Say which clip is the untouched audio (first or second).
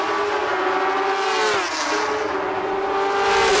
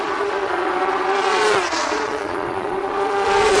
first